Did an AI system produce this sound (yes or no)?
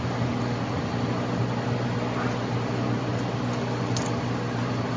no